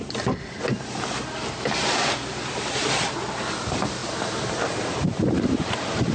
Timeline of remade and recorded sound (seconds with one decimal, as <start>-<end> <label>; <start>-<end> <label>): 0.0-6.1 recorded